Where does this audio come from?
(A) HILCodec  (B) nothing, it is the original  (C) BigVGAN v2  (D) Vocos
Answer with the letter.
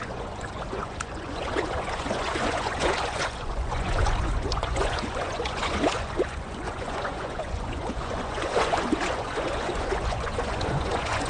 D